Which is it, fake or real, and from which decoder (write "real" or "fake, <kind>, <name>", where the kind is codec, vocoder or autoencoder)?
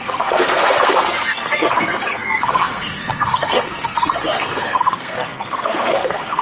fake, codec, SNAC